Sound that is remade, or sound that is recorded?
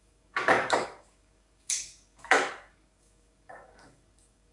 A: remade